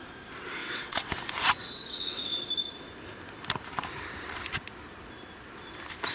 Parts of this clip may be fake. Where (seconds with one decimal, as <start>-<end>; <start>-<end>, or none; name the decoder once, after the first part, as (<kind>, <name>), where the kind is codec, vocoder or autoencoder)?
0.6-1.1 (vocoder, WaveNeXt); 1.6-2.4